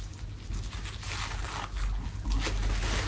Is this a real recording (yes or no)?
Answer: yes